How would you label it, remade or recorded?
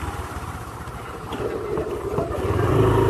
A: remade